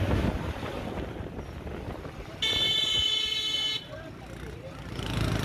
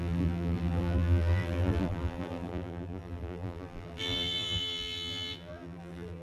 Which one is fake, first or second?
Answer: second